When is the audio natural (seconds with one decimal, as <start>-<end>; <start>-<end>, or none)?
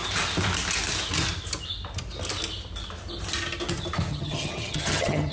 0.0-4.1